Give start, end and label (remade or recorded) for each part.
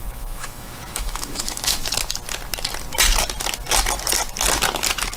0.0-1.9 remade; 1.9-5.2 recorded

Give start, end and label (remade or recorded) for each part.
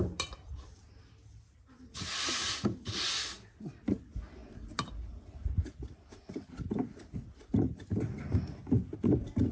0.0-9.5 recorded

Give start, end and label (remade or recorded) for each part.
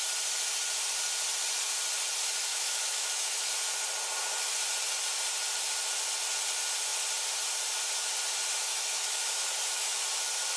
0.0-2.5 recorded; 2.5-3.5 remade; 3.5-8.7 recorded; 8.7-10.0 remade; 10.0-10.6 recorded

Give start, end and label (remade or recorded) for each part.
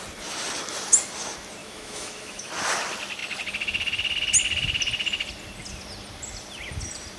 0.0-1.6 recorded; 1.6-2.5 remade; 2.5-7.2 recorded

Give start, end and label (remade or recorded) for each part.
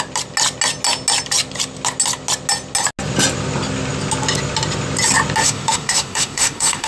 0.0-5.4 recorded; 5.4-6.9 remade